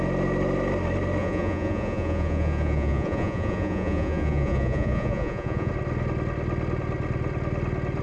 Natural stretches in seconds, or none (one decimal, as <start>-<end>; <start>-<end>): 0.0-1.2; 5.7-8.0